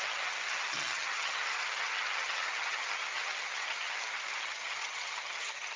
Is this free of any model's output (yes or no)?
no